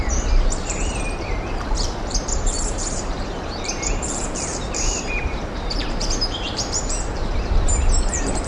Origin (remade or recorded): remade